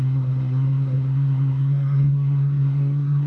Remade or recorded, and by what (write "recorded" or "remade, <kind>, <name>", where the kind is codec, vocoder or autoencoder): remade, codec, SNAC